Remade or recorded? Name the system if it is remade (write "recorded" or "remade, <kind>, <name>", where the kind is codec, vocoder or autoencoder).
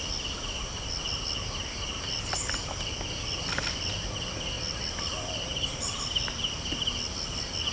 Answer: recorded